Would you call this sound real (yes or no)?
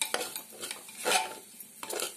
yes